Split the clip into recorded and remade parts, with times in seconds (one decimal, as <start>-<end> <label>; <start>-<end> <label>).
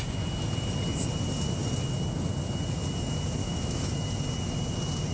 0.0-3.4 recorded; 3.4-3.9 remade; 3.9-5.1 recorded